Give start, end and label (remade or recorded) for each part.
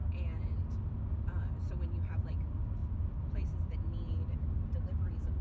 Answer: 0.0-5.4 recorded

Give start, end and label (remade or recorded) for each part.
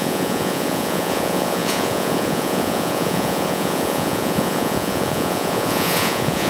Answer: 0.0-6.5 remade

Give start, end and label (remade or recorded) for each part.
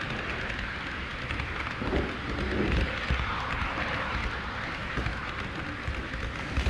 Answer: 0.0-6.7 recorded